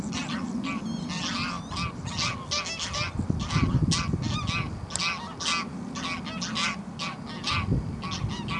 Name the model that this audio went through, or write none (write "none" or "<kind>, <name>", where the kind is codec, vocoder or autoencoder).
none